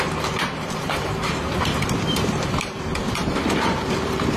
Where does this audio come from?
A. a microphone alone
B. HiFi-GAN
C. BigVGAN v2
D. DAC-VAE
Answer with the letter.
C